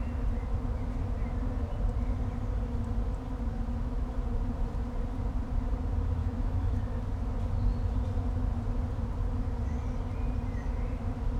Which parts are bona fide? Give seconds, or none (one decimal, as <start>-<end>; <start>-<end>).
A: 0.0-6.2; 6.8-11.4